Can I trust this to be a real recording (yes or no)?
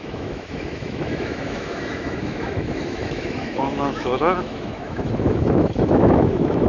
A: no